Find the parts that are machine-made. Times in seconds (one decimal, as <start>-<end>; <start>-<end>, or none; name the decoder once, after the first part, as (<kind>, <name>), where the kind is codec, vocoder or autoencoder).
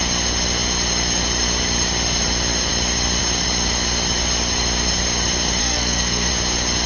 5.6-6.3 (codec, SNAC)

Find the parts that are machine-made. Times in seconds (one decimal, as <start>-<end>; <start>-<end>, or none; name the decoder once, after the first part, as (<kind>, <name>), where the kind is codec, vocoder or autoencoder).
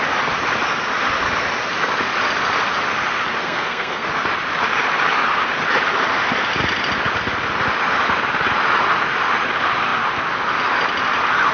3.4-4.1 (codec, SNAC)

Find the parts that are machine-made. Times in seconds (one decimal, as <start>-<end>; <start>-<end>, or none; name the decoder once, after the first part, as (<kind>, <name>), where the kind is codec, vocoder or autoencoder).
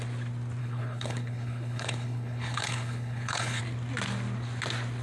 0.6-3.6 (codec, HILCodec)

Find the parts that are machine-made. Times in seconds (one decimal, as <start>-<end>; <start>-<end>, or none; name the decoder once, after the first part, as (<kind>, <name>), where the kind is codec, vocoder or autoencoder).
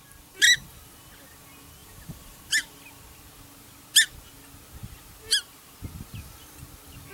1.8-2.4 (vocoder, BigVGAN v2)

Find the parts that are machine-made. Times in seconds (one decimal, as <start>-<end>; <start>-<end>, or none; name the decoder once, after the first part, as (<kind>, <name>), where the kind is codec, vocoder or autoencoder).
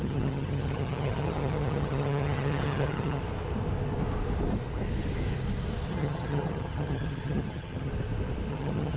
0.0-3.2 (vocoder, HiFi-GAN); 5.9-7.9; 8.5-9.0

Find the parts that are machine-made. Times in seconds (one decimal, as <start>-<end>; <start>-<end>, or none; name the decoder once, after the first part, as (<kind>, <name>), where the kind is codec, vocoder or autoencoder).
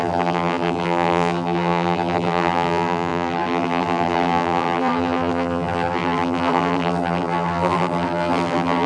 0.0-8.9 (vocoder, BigVGAN v2)